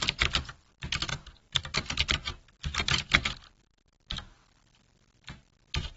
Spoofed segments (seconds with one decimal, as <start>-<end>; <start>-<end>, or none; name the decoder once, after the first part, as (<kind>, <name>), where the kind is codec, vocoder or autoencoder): 1.1-1.6 (vocoder, BigVGAN v2)